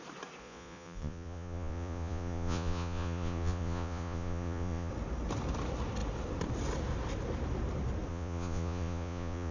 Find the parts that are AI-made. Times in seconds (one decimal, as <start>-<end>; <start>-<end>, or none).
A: 0.4-4.9; 8.1-9.5